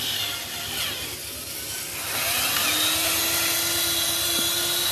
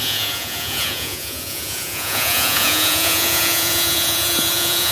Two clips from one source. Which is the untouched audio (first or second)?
first